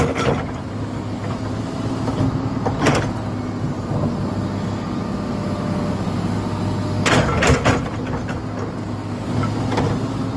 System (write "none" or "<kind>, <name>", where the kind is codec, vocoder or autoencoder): none